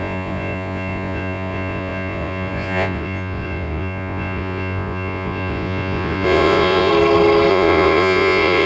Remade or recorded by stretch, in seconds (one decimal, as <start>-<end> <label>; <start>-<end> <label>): 0.0-6.9 remade; 6.9-7.5 recorded; 7.5-8.7 remade